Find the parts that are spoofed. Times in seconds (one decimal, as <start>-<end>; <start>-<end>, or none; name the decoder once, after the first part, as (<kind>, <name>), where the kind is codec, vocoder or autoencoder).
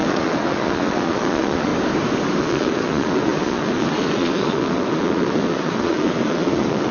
0.0-1.7 (vocoder, Vocos); 2.4-6.9